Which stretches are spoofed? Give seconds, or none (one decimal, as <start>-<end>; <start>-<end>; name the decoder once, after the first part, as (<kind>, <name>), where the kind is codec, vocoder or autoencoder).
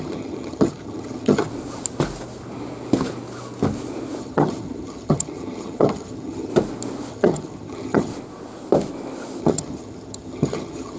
0.0-1.5 (vocoder, HiFi-GAN); 4.2-6.5; 7.1-8.1; 9.4-11.0